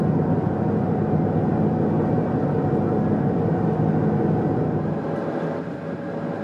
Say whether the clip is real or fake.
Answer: real